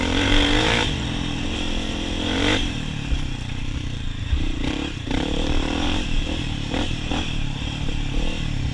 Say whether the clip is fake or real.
fake